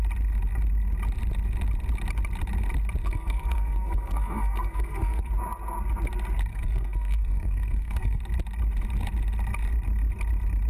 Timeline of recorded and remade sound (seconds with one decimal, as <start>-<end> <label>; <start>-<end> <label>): 0.0-3.0 recorded; 3.0-5.3 remade; 5.3-6.5 recorded; 6.5-8.2 remade; 8.2-10.7 recorded